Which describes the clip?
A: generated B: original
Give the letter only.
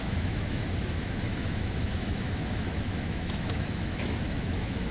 A